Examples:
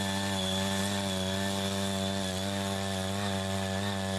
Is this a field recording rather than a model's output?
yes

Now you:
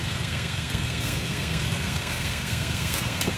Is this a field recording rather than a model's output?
no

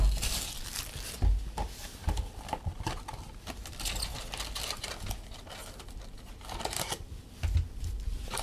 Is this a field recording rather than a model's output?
yes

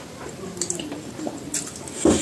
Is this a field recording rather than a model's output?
no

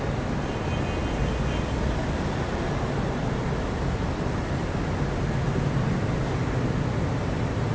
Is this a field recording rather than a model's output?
yes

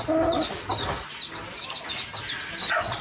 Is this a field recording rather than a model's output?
yes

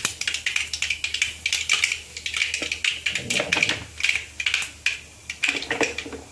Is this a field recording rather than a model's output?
yes